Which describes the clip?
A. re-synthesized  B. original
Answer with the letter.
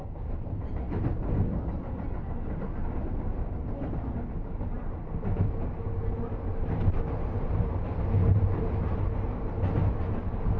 B